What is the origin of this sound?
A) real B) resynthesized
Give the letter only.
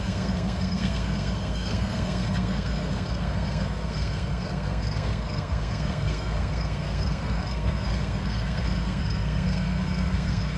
B